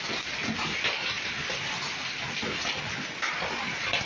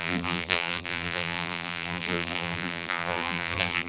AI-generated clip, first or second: second